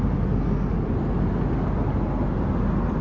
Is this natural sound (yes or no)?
yes